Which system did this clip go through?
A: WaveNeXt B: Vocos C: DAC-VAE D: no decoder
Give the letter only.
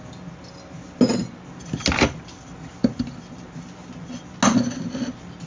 D